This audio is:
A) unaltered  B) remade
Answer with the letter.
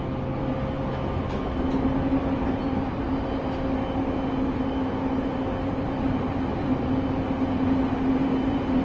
A